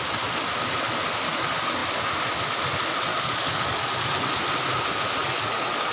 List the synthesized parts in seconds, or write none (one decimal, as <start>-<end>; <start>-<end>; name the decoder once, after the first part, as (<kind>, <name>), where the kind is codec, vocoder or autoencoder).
3.1-3.9 (codec, DAC); 5.2-5.9